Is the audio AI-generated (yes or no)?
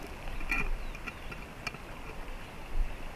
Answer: no